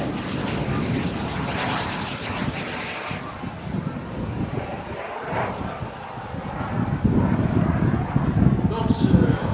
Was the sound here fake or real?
real